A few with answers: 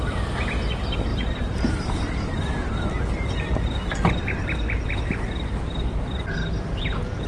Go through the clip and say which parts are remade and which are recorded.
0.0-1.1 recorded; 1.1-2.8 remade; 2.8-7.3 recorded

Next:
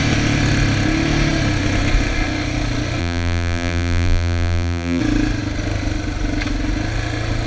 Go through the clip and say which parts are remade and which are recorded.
0.0-3.0 recorded; 3.0-5.0 remade; 5.0-7.5 recorded

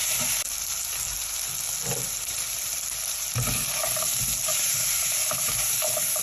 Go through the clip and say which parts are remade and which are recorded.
0.0-4.5 recorded; 4.5-5.3 remade; 5.3-6.2 recorded